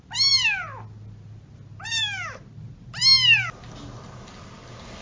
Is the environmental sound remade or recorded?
recorded